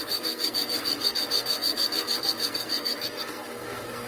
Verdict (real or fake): fake